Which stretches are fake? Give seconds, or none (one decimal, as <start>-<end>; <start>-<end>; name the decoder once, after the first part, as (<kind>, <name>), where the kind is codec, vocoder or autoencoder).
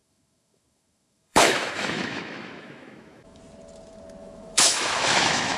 0.0-3.4 (autoencoder, DAC-VAE); 4.2-5.6